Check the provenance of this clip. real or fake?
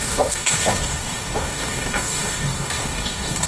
fake